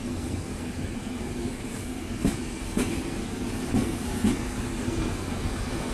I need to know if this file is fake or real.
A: fake